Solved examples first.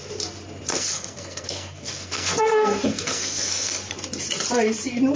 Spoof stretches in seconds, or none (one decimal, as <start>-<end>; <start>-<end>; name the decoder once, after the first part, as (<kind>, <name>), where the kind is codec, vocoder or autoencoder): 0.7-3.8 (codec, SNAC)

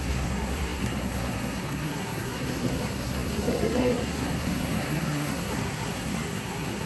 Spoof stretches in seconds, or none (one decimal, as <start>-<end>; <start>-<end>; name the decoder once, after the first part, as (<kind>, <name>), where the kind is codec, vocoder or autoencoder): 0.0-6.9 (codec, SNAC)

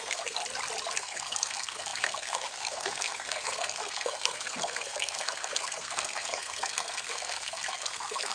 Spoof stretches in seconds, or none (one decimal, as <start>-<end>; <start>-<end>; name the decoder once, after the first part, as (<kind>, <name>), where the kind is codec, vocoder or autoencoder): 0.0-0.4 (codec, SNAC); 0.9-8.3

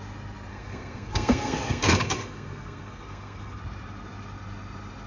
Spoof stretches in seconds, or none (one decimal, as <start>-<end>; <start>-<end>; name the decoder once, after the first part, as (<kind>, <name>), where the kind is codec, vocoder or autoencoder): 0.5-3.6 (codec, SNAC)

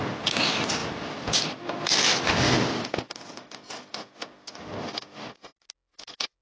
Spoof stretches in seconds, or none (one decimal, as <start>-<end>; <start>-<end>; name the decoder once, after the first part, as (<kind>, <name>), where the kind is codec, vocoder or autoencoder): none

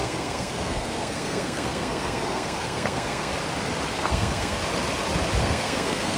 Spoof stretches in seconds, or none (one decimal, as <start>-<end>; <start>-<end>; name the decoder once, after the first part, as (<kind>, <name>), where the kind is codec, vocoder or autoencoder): 0.0-3.3 (codec, SNAC); 3.9-4.6; 5.4-6.2

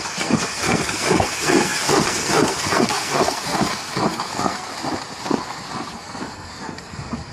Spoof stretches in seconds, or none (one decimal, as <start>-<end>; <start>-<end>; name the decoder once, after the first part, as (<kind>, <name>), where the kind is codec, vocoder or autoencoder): 0.0-4.7 (codec, SNAC); 5.2-7.3

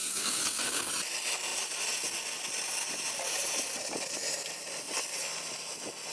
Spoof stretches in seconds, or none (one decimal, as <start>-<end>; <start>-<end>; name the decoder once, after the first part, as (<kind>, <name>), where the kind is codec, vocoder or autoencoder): 0.0-0.9 (codec, SNAC)